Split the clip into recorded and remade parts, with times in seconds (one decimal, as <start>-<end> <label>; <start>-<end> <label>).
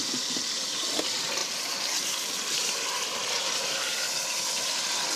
0.0-5.2 recorded